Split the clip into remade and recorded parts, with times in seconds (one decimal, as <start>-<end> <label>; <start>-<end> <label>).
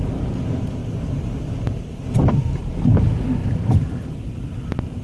0.0-0.8 remade; 0.8-2.3 recorded; 2.3-5.0 remade